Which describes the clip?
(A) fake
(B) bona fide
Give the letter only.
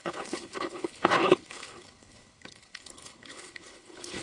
A